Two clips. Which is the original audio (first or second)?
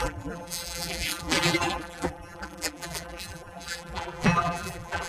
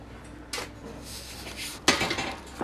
second